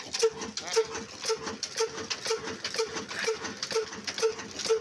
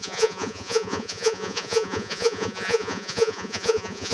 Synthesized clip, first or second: second